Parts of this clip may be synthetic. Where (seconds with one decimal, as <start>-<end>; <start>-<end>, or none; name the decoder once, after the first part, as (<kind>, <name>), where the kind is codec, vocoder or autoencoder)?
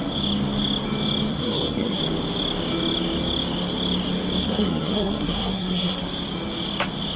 1.3-2.0 (codec, SNAC); 4.4-6.0